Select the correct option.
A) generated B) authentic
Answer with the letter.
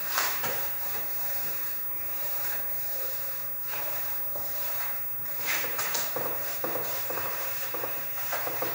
B